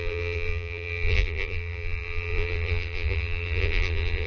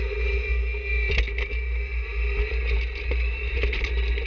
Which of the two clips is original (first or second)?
second